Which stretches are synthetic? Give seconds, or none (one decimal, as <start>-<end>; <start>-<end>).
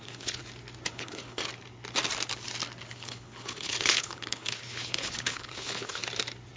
0.0-0.4; 0.9-1.4; 2.9-6.0